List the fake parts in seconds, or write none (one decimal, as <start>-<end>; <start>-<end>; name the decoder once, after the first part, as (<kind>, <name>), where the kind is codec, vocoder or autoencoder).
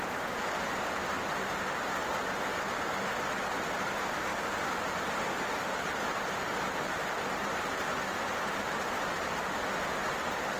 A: none